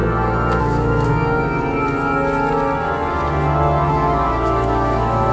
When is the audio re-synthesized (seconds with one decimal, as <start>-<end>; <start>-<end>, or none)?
0.6-1.1; 3.9-5.3